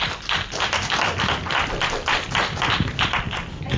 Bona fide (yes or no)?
yes